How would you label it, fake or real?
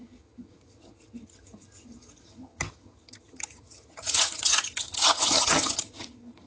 fake